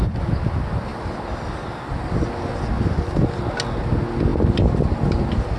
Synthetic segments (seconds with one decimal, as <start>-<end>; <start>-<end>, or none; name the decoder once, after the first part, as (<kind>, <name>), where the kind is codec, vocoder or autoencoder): 0.9-2.3 (vocoder, BigVGAN v2)